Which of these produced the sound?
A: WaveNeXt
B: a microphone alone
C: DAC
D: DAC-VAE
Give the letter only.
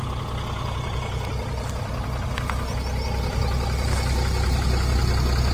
B